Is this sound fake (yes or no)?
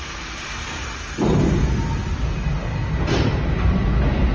no